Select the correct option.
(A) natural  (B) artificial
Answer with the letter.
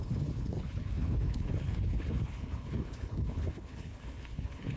B